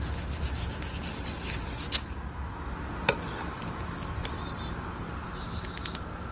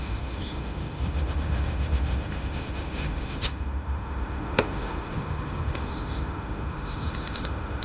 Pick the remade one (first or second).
second